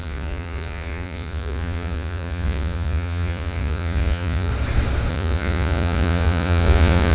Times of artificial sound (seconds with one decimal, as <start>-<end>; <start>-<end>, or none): 0.0-4.5; 5.1-7.1